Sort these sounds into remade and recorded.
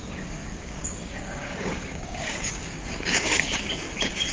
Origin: remade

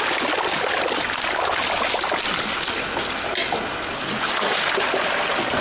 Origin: recorded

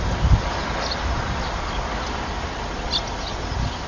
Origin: recorded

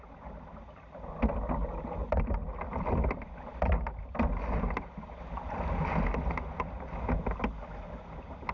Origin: recorded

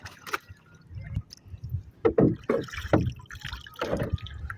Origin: recorded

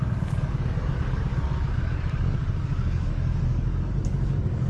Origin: remade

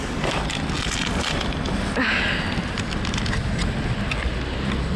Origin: recorded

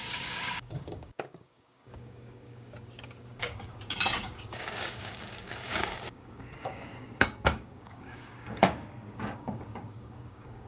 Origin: remade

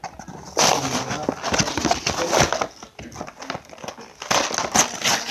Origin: recorded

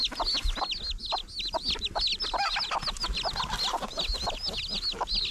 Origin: recorded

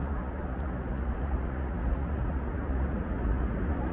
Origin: remade